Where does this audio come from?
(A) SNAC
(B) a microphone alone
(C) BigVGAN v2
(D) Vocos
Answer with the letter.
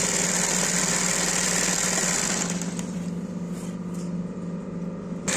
B